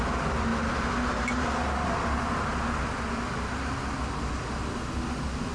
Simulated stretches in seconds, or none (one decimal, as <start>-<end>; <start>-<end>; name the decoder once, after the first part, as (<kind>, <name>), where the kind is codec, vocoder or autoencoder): 4.6-5.5 (vocoder, BigVGAN v2)